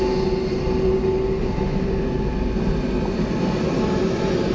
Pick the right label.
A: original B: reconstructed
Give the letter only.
A